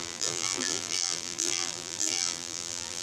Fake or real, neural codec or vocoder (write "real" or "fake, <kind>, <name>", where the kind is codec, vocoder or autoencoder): fake, vocoder, BigVGAN v2